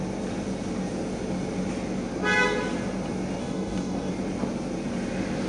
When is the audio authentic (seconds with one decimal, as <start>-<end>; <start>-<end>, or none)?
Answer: 0.0-3.4; 4.1-5.5